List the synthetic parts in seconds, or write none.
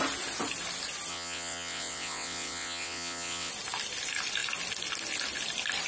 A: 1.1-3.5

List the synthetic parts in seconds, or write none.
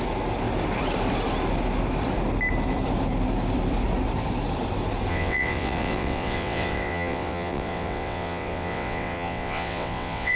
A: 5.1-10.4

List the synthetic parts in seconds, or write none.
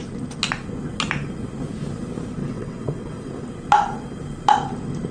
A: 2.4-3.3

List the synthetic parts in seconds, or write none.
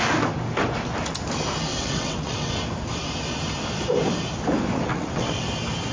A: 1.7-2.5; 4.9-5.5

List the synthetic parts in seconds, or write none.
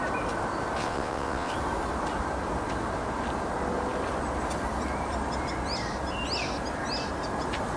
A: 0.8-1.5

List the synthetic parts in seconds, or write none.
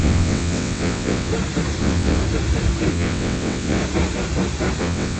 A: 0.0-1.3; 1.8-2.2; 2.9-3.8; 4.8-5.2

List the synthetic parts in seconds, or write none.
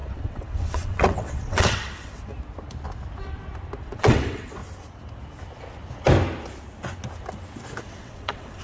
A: 0.0-2.3; 3.8-4.6; 7.8-8.6